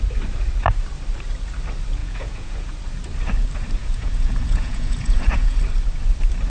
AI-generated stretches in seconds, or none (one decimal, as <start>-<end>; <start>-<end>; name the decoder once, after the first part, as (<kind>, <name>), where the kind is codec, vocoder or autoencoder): 2.0-2.7 (vocoder, Vocos); 3.8-5.6